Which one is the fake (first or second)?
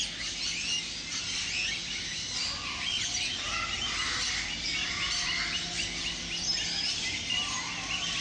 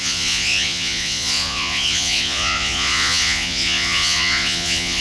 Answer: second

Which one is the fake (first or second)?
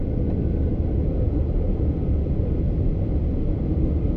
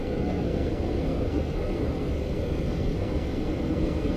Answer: second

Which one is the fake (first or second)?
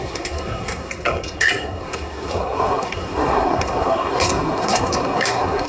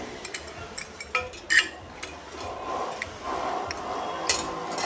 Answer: first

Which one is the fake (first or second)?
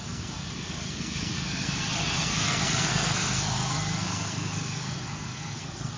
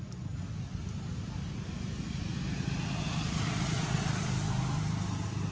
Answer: first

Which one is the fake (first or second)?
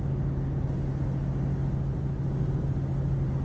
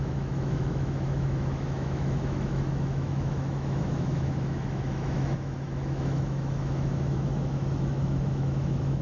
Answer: second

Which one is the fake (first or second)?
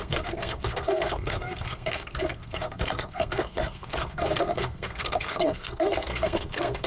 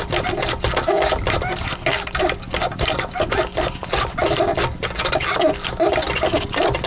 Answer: first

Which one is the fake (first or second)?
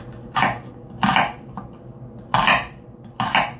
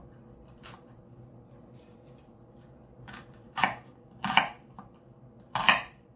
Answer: second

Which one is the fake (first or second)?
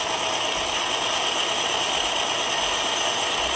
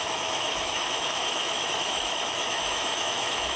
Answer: second